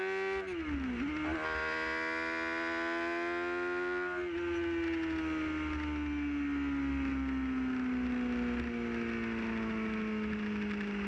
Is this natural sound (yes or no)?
yes